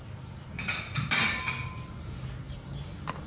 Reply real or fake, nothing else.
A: real